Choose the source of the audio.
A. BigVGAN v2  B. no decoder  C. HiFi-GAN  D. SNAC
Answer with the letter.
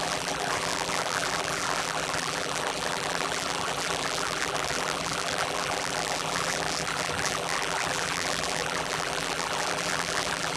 A